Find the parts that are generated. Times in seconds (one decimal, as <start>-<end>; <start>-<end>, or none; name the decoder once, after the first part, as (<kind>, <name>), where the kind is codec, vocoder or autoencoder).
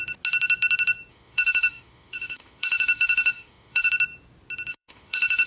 1.1-3.9 (autoencoder, DAC-VAE); 4.7-5.5